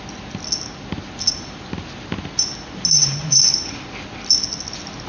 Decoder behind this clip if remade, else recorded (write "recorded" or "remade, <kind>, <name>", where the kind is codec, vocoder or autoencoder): recorded